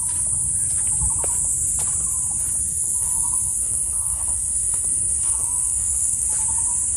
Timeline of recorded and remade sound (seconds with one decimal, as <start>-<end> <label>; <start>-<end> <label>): 0.0-2.7 recorded; 2.7-6.3 remade; 6.3-7.0 recorded